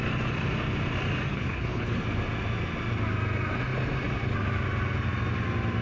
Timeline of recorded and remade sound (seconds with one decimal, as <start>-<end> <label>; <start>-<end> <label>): 0.0-1.3 recorded; 1.3-2.0 remade; 2.0-5.8 recorded